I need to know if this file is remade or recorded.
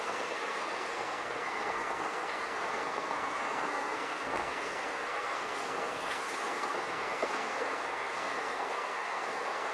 remade